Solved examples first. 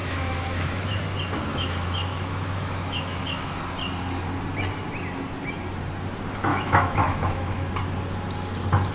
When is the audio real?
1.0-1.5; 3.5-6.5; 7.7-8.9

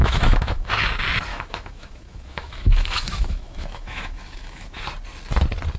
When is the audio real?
0.7-1.3; 4.8-5.8

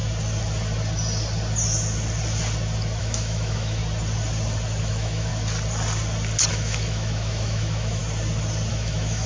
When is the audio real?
0.0-3.0; 3.8-4.8; 5.3-6.5; 8.0-8.7

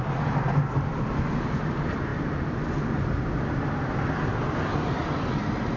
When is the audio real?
0.0-5.8

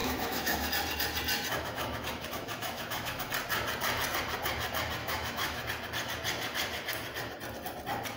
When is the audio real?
0.7-1.5; 3.3-5.0; 5.7-8.2

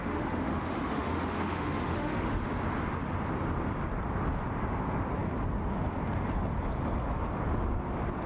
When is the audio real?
2.4-8.3